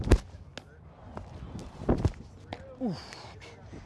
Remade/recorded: recorded